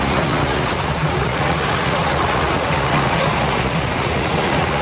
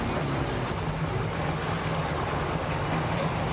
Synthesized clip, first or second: first